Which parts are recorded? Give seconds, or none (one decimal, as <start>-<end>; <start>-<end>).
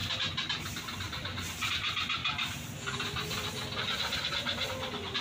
1.7-5.2